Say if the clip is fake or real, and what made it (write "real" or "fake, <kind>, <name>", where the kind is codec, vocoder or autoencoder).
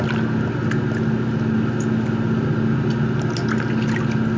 real